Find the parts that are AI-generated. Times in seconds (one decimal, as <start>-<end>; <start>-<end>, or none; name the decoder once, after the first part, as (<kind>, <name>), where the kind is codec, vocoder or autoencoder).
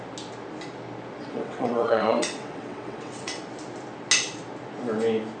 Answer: 1.2-3.4 (vocoder, WaveNeXt)